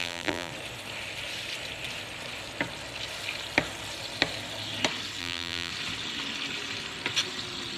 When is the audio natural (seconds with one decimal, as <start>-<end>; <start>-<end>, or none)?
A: 0.5-5.2; 5.7-7.8